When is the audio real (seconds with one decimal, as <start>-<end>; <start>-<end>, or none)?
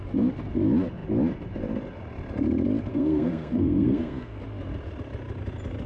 0.0-2.9; 4.4-5.9